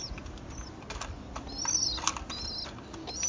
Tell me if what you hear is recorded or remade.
recorded